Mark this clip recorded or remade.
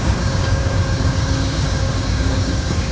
remade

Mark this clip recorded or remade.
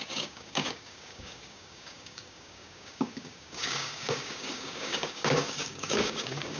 remade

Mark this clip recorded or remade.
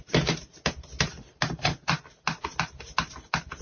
recorded